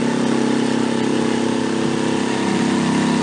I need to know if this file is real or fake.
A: real